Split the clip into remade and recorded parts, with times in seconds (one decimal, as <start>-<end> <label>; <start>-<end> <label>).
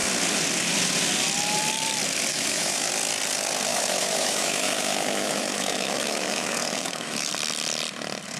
0.0-2.3 recorded; 2.3-2.9 remade; 2.9-3.7 recorded; 3.7-7.3 remade; 7.3-8.4 recorded